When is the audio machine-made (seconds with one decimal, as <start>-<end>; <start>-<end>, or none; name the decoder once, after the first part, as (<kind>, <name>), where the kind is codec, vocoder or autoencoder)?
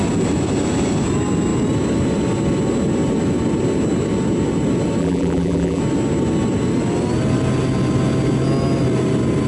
5.0-5.8 (vocoder, BigVGAN v2)